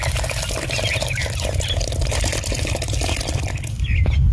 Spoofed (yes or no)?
no